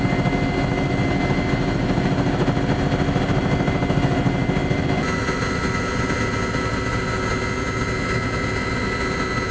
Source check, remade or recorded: recorded